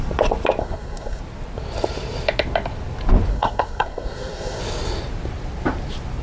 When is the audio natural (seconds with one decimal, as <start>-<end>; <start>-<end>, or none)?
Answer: 0.0-0.6; 1.2-3.3; 4.6-6.2

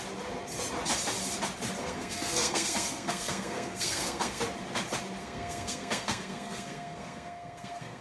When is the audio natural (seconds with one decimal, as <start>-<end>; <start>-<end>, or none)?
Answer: 0.0-1.8; 4.4-5.2

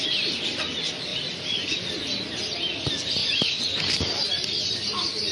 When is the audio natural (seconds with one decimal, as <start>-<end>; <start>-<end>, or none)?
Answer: 0.0-5.3

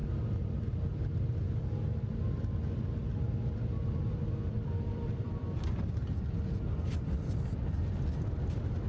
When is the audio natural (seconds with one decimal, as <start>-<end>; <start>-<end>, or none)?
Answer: 0.0-3.0; 7.6-8.9